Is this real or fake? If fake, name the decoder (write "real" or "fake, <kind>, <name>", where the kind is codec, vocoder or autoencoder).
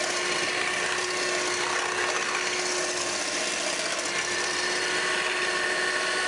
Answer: real